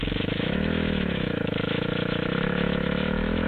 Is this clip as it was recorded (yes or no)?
no